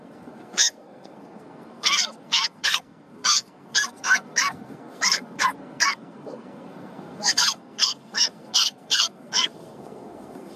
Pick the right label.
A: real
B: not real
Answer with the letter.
B